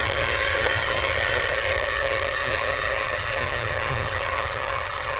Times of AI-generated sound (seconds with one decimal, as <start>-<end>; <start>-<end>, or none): 0.0-5.2